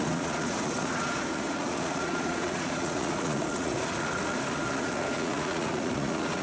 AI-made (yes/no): yes